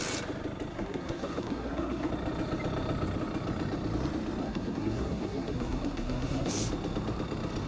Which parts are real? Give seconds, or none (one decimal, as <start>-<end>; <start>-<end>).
0.0-0.7; 2.1-4.4; 6.5-7.7